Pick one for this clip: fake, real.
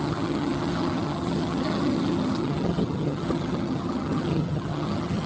fake